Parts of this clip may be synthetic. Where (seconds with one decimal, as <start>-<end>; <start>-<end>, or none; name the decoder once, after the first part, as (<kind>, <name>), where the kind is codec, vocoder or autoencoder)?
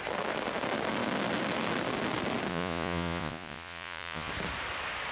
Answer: 2.5-4.3 (vocoder, Vocos)